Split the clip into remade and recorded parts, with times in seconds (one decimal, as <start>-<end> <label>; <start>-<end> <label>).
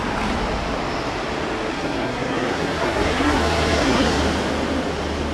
0.0-1.7 recorded; 1.7-4.2 remade; 4.2-5.3 recorded